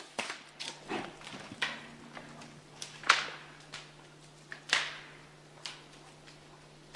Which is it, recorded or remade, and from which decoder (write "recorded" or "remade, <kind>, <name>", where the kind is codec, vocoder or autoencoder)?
recorded